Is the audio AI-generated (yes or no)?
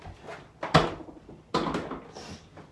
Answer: no